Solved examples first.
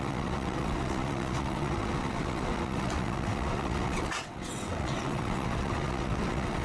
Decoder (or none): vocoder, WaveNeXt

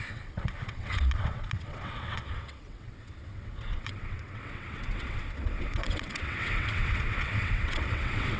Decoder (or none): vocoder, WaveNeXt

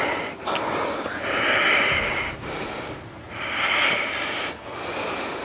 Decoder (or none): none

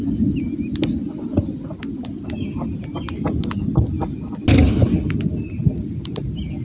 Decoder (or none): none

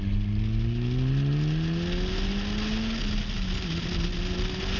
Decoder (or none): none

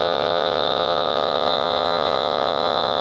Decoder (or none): vocoder, WaveNeXt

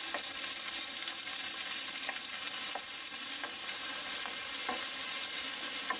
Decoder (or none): none